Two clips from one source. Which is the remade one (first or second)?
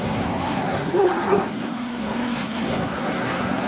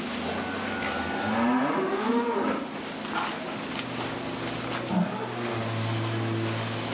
first